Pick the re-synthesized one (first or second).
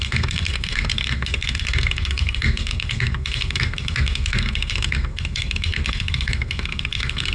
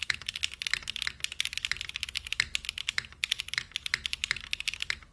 first